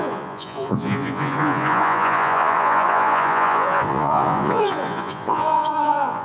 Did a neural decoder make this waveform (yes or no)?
yes